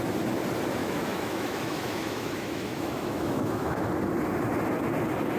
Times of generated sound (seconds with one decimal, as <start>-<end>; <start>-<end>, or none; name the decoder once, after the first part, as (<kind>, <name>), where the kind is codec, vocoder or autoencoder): 0.8-3.9 (autoencoder, DAC-VAE)

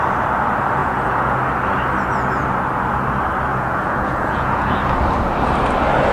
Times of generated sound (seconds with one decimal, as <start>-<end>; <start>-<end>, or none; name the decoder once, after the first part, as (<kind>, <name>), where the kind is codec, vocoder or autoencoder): 0.8-1.4 (vocoder, Vocos); 3.5-4.8

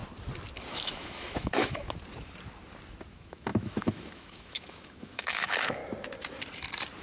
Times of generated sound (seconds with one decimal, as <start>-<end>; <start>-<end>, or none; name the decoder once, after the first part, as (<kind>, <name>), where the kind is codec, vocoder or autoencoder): 0.7-1.8 (autoencoder, DAC-VAE); 3.1-5.8

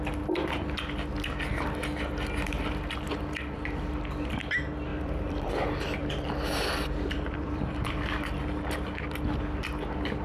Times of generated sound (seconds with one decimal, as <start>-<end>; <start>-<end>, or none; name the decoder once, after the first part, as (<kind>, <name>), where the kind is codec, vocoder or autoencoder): 4.9-5.5 (vocoder, BigVGAN v2); 6.0-8.4

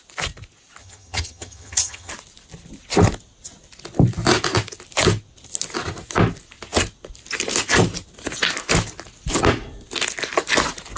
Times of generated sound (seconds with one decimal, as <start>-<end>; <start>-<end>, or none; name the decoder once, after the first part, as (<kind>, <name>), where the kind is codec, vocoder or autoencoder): 0.8-2.1 (vocoder, HiFi-GAN)

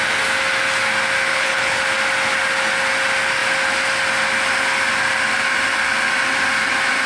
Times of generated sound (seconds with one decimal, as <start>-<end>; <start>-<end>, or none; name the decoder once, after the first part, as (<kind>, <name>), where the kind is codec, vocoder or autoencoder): 1.3-1.8 (codec, HILCodec)